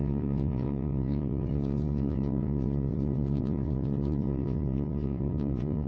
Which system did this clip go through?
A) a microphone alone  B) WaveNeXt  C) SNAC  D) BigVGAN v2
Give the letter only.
B